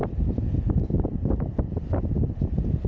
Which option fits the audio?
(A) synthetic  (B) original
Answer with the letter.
B